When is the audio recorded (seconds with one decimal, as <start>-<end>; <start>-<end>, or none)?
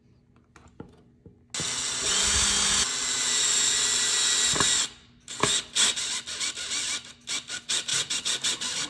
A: 0.0-8.9